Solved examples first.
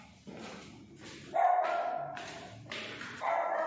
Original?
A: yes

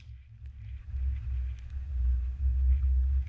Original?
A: yes